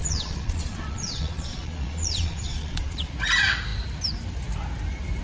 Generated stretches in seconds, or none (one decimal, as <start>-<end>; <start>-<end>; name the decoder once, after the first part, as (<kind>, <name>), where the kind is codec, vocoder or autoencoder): 0.0-3.1 (vocoder, Vocos)